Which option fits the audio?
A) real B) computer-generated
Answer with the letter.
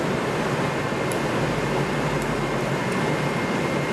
A